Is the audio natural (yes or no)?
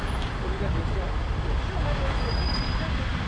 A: yes